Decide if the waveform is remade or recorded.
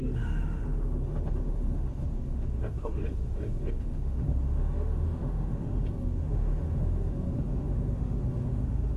remade